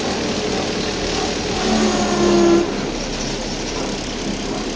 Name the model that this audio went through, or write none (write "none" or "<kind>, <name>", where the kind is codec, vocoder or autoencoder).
none